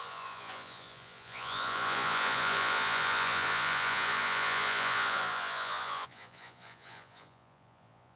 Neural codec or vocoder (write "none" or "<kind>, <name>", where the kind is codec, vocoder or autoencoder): vocoder, Vocos